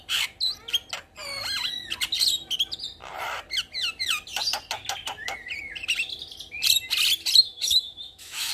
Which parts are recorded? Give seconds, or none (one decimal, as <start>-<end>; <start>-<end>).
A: 0.0-7.5